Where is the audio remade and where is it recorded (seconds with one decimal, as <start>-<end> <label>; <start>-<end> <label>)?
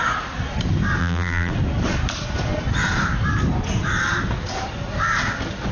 0.0-1.0 recorded; 1.0-1.5 remade; 1.5-5.7 recorded